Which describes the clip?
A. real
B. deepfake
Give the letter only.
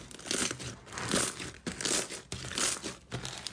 A